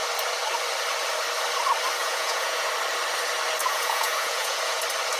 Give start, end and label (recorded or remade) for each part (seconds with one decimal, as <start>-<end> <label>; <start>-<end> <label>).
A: 0.0-2.0 recorded; 2.0-2.7 remade; 2.7-3.6 recorded; 3.6-4.8 remade; 4.8-5.2 recorded